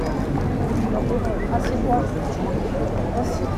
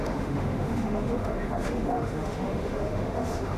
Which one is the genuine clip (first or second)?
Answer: first